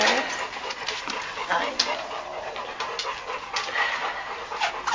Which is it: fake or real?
real